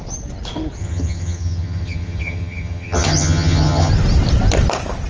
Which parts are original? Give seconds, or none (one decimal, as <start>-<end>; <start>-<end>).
0.0-0.8; 3.9-5.1